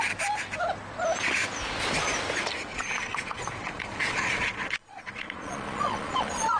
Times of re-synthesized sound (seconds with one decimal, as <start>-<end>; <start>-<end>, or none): 2.7-6.6